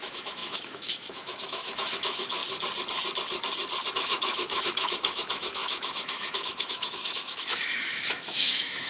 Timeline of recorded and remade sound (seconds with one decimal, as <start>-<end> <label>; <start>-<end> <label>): 0.0-2.4 remade; 2.4-3.9 recorded; 3.9-8.9 remade